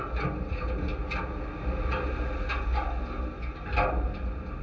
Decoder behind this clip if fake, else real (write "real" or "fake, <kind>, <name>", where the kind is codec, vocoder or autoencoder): real